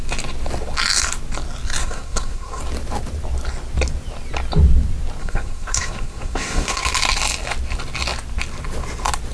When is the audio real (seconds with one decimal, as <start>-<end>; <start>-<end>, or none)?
0.0-1.8; 2.6-5.2; 6.9-9.3